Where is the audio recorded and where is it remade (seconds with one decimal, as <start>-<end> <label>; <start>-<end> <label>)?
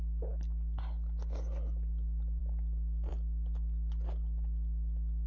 0.0-5.3 recorded